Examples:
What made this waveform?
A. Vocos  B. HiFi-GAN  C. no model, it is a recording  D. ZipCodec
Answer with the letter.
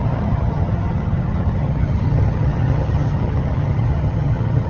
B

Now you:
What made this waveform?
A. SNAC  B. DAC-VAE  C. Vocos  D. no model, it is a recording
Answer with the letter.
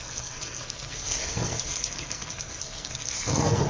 A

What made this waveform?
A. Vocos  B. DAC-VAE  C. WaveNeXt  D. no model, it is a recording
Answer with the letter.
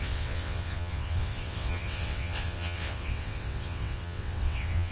C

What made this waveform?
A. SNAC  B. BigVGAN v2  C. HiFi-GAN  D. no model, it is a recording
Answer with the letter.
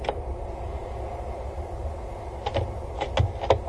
D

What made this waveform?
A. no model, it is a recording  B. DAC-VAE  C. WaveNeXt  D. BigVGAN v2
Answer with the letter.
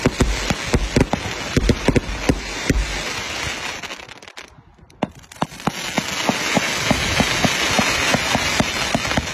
A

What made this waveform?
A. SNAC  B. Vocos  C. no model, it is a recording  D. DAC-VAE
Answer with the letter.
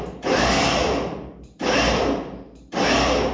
C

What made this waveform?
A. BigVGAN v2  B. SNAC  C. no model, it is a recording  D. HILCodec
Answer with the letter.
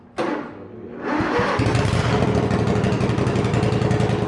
C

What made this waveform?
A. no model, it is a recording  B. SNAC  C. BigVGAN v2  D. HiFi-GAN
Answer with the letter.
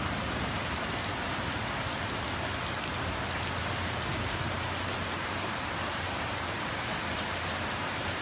A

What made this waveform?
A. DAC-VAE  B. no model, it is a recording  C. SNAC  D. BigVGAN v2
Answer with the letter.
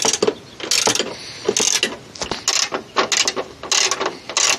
B